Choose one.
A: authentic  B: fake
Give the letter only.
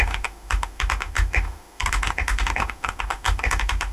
B